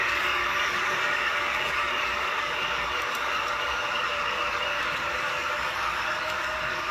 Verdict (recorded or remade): remade